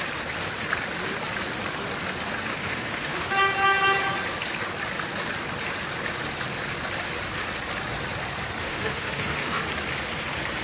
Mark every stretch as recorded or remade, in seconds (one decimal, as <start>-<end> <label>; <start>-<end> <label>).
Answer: 0.0-2.5 recorded; 2.5-3.3 remade; 3.3-8.6 recorded; 8.6-9.6 remade; 9.6-10.6 recorded

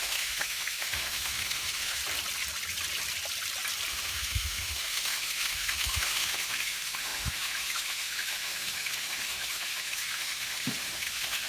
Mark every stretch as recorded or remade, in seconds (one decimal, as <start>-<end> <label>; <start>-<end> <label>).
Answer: 0.0-2.0 remade; 2.0-3.9 recorded; 3.9-11.5 remade

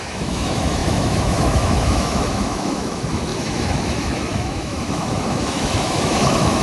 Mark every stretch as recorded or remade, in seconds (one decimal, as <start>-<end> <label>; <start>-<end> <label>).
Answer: 0.0-6.6 remade

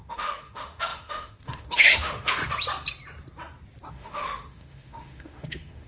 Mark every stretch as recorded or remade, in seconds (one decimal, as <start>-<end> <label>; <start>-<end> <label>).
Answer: 0.0-2.4 remade; 2.4-3.9 recorded; 3.9-5.9 remade